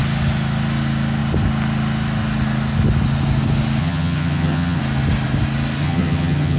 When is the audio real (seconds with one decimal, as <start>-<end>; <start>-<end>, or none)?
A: 0.0-3.8; 4.8-5.8